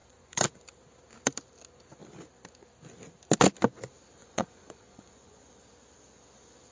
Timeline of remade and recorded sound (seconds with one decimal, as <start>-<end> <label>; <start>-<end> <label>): 0.0-0.5 remade; 0.5-4.2 recorded; 4.2-5.5 remade; 5.5-6.7 recorded